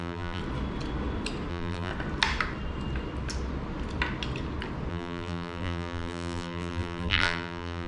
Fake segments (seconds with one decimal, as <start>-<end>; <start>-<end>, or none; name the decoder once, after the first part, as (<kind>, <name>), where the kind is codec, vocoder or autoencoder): 0.0-0.4 (vocoder, BigVGAN v2); 1.5-1.9; 4.9-7.9